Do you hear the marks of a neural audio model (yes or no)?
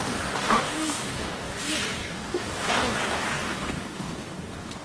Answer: yes